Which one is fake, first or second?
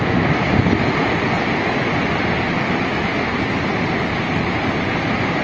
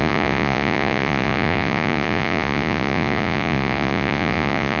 second